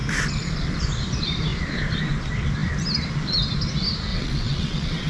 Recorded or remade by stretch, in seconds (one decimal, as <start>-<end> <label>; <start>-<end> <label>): 0.0-4.1 recorded; 4.1-5.1 remade